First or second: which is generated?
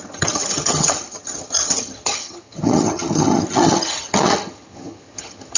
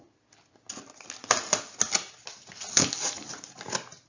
first